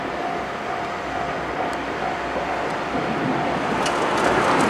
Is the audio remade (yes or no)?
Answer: no